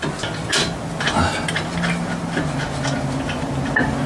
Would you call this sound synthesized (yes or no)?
no